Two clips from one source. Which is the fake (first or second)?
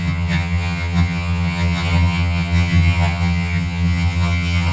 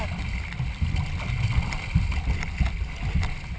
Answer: first